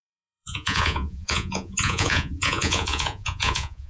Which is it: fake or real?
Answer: fake